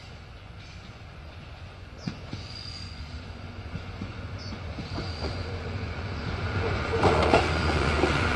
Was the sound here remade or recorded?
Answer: remade